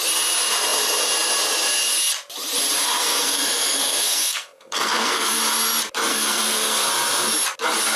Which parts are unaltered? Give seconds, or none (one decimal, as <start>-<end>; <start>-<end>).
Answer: 0.0-3.0; 5.4-6.1; 6.9-8.0